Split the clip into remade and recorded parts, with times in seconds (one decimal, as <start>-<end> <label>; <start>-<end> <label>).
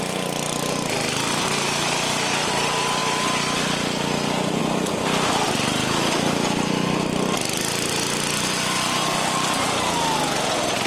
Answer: 0.0-10.9 recorded